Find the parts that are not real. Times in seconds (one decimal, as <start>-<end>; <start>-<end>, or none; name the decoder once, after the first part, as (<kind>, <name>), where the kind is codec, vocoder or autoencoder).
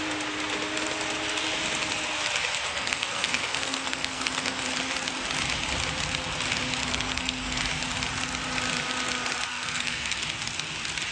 2.7-4.6 (codec, SNAC); 6.8-7.6; 9.5-10.2